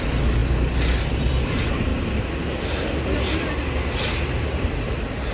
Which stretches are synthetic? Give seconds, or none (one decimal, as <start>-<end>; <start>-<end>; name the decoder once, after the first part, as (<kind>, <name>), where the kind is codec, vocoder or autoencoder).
none